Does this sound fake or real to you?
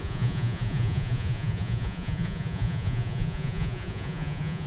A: fake